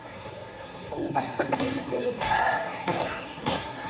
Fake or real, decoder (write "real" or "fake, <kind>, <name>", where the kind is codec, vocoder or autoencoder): fake, codec, SNAC